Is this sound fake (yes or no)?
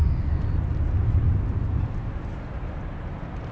no